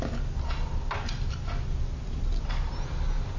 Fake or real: real